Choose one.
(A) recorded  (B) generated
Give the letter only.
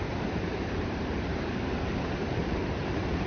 B